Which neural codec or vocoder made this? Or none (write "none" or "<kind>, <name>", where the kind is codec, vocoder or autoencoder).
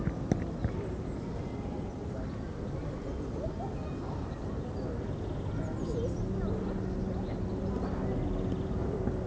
none